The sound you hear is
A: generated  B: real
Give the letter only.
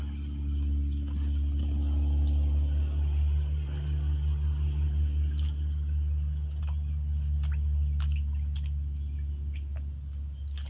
B